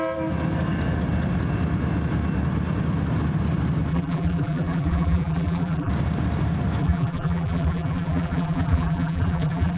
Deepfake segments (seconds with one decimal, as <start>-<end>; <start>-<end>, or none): 3.9-5.9; 6.8-9.8

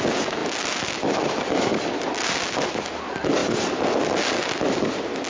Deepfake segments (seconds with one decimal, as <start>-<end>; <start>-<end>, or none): 0.4-2.7; 3.4-4.6